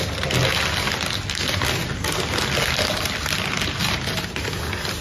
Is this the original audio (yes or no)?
yes